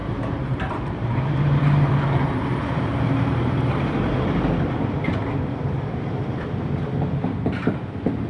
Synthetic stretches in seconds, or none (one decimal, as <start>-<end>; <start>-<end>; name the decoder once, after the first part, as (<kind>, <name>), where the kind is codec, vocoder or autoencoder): 0.0-2.0 (vocoder, BigVGAN v2); 2.9-7.6